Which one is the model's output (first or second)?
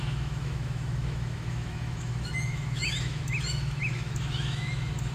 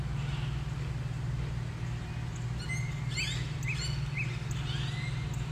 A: first